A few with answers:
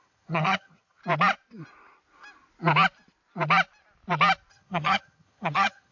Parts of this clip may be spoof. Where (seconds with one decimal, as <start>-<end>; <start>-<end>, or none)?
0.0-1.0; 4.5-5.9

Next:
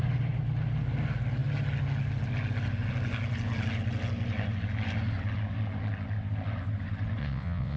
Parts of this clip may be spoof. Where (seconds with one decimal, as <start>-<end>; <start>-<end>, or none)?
7.2-7.8

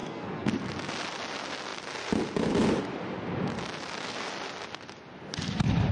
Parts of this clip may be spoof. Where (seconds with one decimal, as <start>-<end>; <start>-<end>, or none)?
0.0-0.5

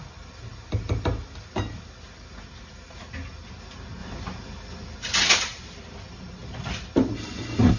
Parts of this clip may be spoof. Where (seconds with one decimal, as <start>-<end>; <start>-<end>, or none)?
none

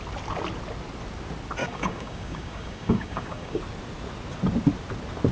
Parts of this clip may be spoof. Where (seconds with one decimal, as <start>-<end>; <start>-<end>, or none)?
1.6-3.6

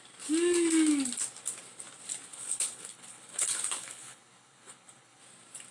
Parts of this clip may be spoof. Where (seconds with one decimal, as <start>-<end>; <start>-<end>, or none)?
2.3-5.2